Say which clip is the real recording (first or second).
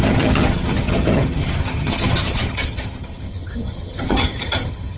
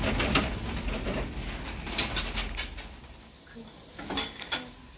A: second